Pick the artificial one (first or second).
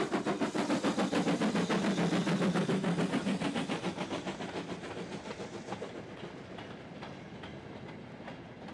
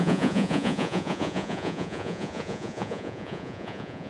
second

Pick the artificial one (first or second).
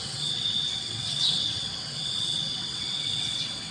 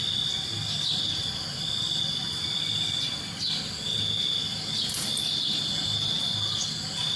first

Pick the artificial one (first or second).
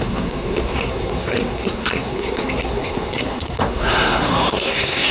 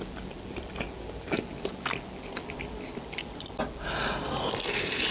first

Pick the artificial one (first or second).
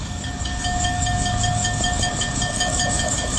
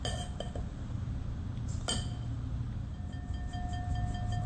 first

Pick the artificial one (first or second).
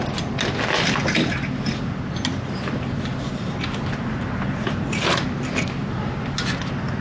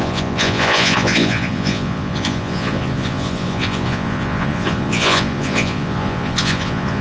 second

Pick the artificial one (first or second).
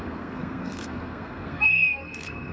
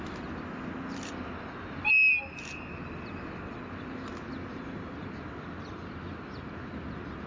first